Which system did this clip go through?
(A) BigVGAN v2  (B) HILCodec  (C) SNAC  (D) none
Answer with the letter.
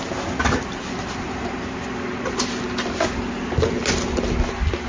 D